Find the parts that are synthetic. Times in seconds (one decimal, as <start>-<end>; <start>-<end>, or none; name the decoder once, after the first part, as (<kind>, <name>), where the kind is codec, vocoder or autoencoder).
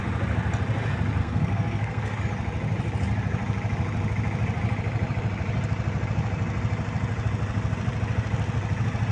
1.2-2.2 (codec, SNAC)